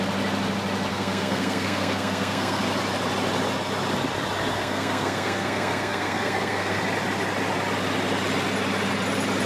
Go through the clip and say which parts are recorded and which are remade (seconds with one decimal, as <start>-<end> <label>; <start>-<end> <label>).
0.0-0.9 recorded; 0.9-2.6 remade; 2.6-4.5 recorded; 4.5-6.8 remade; 6.8-9.5 recorded